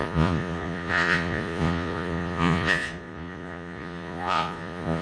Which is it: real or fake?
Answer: fake